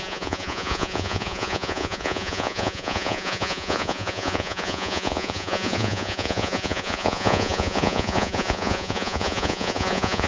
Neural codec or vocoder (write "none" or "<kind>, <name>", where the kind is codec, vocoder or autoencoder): vocoder, Vocos